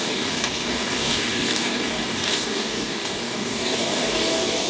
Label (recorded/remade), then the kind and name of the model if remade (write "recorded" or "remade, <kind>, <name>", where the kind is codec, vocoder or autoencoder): remade, codec, DAC